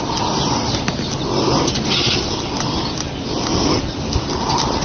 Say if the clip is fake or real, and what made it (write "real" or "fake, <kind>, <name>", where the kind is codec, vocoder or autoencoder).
real